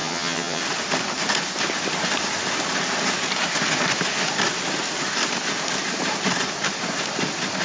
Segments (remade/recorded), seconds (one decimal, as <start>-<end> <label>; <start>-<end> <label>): 0.0-0.6 remade; 0.6-7.6 recorded